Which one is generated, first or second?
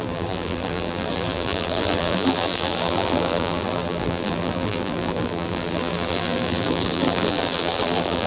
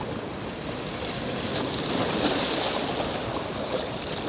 first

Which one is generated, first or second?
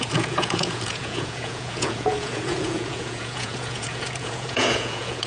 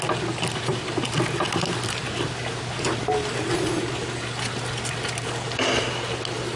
first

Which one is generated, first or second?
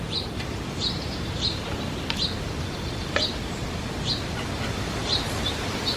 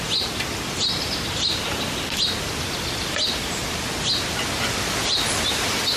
first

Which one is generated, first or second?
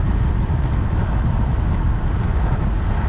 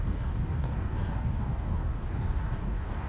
second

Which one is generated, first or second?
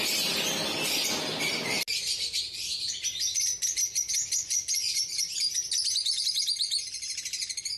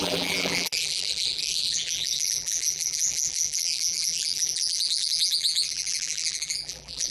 second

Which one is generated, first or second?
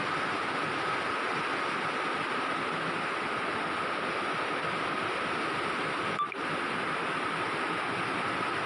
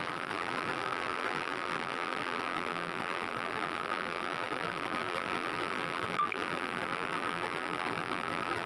second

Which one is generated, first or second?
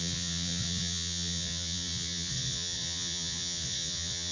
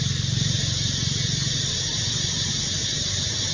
first